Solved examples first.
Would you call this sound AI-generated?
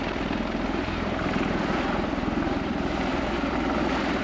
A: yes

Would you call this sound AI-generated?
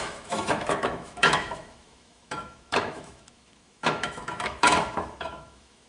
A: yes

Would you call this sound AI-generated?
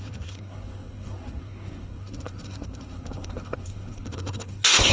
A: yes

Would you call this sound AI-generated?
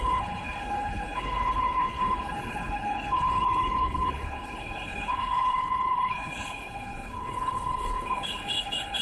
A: yes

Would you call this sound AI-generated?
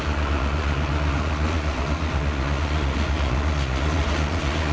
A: yes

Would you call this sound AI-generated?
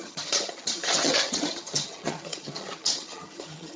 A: yes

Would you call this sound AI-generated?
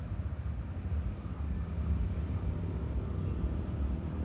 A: no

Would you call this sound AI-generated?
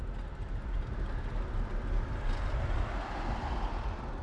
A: no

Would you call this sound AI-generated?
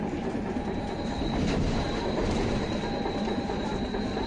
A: yes